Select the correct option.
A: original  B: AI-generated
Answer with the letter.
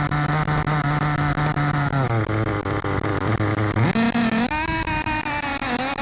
A